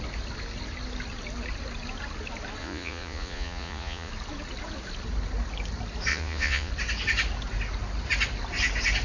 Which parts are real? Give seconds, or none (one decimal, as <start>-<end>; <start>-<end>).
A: 0.0-2.6; 4.1-6.1; 6.7-9.0